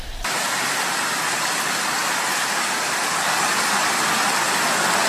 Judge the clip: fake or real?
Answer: real